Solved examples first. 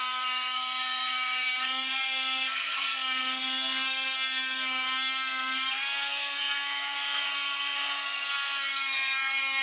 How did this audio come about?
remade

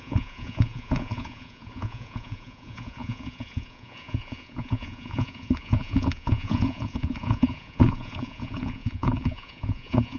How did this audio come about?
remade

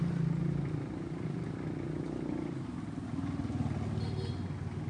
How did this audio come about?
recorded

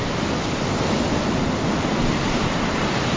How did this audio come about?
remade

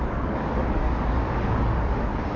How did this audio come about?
remade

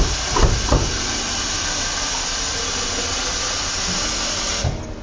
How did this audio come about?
remade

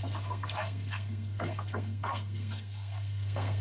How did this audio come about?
remade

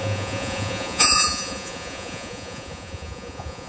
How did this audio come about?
remade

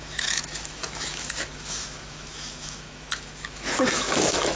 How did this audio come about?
remade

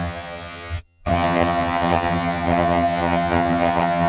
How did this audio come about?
remade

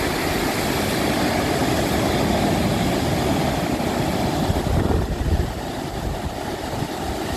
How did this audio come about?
recorded